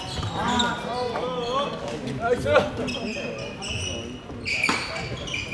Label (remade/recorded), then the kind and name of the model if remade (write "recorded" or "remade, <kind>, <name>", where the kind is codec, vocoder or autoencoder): recorded